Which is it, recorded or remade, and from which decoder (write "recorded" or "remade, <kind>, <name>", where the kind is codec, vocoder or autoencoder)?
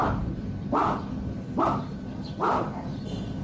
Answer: remade, vocoder, BigVGAN v2